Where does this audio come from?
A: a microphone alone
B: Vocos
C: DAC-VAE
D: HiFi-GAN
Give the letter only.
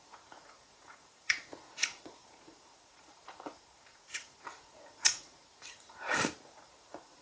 B